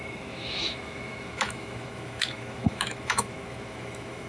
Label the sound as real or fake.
fake